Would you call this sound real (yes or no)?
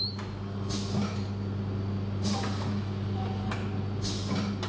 yes